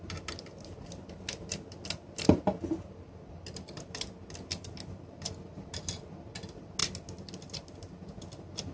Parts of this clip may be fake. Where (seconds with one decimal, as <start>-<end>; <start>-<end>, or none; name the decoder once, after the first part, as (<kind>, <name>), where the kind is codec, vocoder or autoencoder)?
none

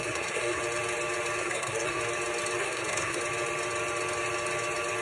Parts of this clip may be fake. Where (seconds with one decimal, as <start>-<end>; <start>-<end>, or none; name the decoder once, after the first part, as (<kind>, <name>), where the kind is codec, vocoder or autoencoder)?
0.0-0.6 (codec, SNAC); 1.4-2.0; 2.6-3.2

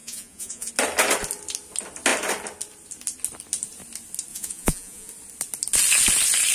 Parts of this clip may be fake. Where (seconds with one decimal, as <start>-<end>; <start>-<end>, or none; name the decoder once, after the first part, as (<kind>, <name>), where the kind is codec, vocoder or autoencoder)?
0.0-0.7 (vocoder, Vocos); 4.3-5.1

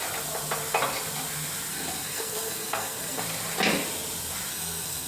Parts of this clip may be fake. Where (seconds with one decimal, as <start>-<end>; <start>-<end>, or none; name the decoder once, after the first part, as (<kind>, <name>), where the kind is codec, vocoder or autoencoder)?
1.7-3.2 (codec, SNAC); 4.5-5.1

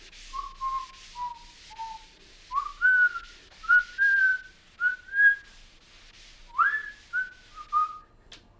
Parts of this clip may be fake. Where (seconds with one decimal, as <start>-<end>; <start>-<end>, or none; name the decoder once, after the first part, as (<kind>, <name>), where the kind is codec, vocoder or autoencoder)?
none

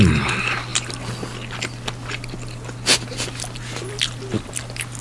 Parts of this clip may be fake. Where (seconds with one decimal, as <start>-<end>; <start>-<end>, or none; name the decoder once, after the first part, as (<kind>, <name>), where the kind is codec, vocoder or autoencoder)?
none